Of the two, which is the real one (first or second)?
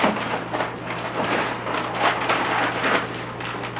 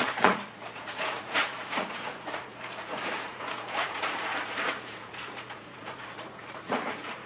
first